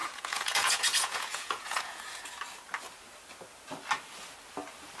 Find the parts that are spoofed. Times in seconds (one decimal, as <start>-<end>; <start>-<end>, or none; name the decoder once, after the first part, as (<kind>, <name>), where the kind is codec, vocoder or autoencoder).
0.0-2.0 (vocoder, Vocos)